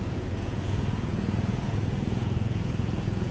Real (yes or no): no